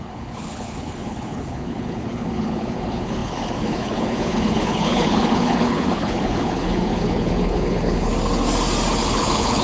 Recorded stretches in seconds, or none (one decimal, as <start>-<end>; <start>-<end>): 8.1-9.0